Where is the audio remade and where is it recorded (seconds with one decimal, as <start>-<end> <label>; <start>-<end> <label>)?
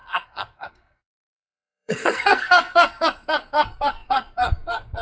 0.0-5.0 remade